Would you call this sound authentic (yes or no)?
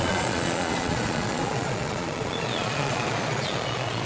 no